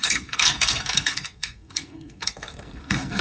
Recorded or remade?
remade